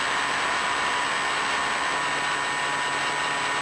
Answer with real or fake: real